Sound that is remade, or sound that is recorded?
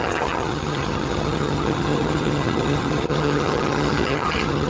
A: remade